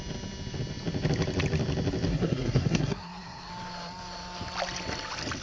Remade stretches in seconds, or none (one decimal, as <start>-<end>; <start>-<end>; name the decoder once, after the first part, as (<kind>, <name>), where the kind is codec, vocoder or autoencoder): 2.1-3.5 (codec, SNAC)